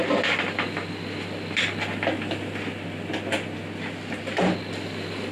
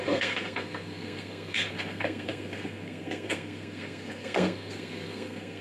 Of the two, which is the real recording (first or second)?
first